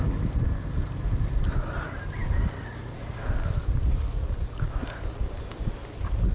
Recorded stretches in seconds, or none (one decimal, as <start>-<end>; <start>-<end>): 0.0-6.3